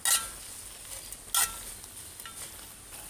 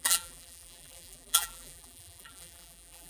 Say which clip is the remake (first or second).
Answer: second